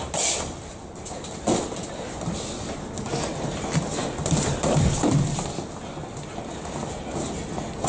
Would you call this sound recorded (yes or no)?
yes